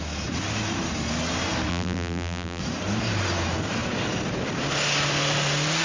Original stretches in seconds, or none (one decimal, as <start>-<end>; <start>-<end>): 0.0-1.7; 2.6-5.8